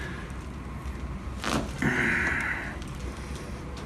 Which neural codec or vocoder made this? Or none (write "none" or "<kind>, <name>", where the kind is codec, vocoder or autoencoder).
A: none